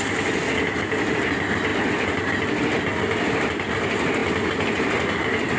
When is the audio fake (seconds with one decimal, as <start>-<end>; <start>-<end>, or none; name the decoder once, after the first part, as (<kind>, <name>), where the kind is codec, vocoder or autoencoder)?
none